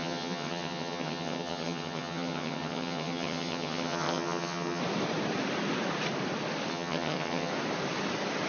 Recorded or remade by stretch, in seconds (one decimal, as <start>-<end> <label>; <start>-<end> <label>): 0.0-4.8 remade; 4.8-6.7 recorded; 6.7-7.5 remade; 7.5-8.5 recorded